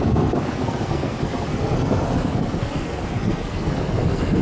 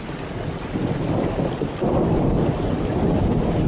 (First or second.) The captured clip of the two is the second